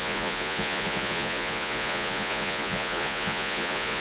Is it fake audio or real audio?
fake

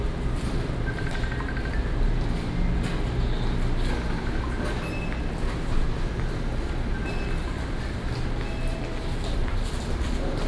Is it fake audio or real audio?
real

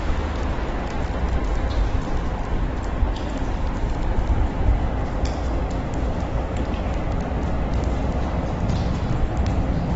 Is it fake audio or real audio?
real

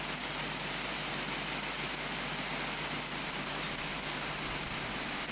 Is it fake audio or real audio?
real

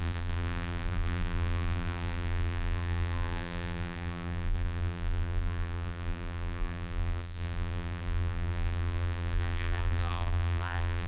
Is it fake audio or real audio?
fake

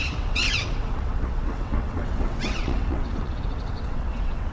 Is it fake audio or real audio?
fake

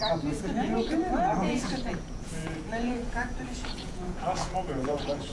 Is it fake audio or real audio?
fake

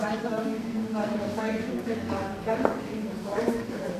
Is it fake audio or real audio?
fake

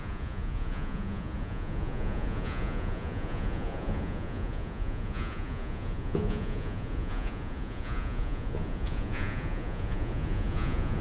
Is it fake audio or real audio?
fake